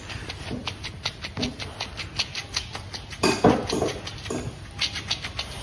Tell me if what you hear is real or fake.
real